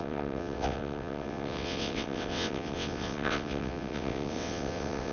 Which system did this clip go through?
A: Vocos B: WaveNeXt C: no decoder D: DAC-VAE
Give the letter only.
B